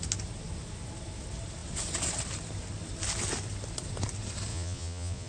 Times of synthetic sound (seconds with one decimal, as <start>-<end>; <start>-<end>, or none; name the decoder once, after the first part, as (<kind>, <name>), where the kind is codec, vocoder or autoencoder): 4.5-5.3 (vocoder, Vocos)